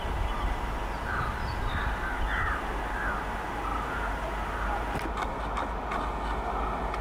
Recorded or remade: recorded